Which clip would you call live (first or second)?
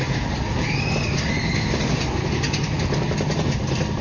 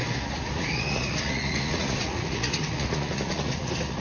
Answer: first